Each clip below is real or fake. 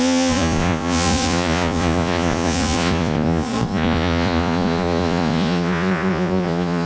fake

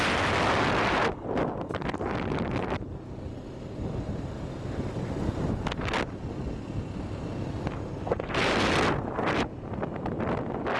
real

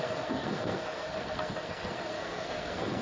fake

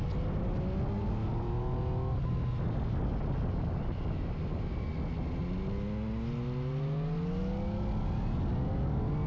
real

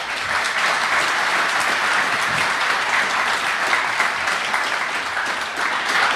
real